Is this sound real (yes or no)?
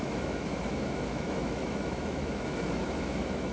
no